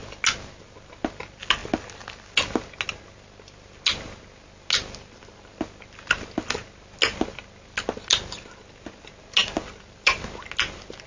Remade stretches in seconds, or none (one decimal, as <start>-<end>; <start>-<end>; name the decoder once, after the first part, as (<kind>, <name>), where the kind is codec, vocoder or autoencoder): none